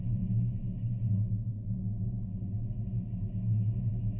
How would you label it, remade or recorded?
remade